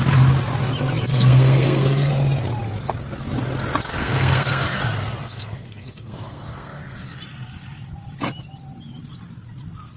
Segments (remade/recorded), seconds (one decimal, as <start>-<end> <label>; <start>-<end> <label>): 0.0-1.0 recorded; 1.0-2.1 remade; 2.1-3.9 recorded; 3.9-4.8 remade; 4.8-5.2 recorded; 5.2-7.2 remade; 7.2-10.0 recorded